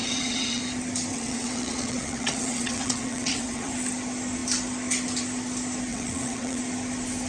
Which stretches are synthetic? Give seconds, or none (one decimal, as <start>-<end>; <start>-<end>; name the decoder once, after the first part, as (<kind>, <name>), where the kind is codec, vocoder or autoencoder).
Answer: 0.0-0.6 (vocoder, WaveNeXt); 1.1-3.7; 5.9-6.6

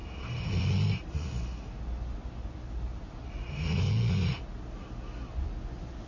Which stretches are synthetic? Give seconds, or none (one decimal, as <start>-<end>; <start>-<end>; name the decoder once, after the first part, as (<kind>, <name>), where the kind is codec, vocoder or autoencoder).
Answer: none

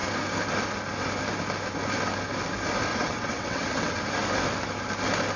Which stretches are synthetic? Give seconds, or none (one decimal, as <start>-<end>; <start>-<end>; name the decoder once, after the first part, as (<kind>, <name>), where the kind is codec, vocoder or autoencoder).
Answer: 2.9-4.0 (vocoder, WaveNeXt)

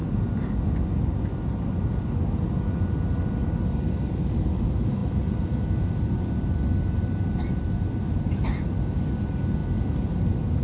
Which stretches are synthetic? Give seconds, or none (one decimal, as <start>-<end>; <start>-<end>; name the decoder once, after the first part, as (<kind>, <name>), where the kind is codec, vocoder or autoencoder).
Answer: none

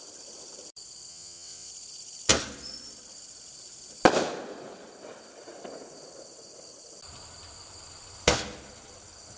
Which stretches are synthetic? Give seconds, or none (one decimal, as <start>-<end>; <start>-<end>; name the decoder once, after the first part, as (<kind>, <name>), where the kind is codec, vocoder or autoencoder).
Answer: 1.1-1.7 (vocoder, WaveNeXt)

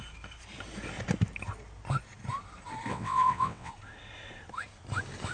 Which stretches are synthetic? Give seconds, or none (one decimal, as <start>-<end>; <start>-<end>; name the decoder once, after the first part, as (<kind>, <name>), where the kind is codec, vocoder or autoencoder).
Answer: 2.9-3.7 (vocoder, WaveNeXt)